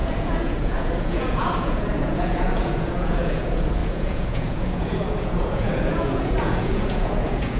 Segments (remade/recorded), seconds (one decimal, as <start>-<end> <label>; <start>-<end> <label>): 0.0-7.6 remade